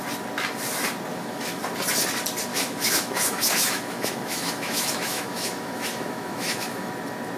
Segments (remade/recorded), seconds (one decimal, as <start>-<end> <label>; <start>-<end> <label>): 0.0-1.1 recorded; 1.1-1.6 remade; 1.6-2.5 recorded; 2.5-6.9 remade; 6.9-7.4 recorded